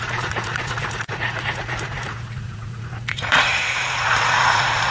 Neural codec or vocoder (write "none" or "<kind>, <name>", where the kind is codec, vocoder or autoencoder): vocoder, Vocos